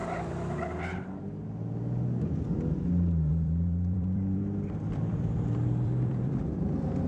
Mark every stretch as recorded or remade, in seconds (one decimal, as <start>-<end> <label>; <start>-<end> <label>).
0.0-3.3 recorded; 3.3-7.1 remade